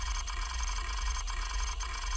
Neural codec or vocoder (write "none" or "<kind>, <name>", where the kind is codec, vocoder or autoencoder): vocoder, Vocos